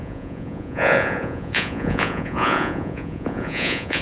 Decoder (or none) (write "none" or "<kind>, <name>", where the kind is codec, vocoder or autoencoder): vocoder, Vocos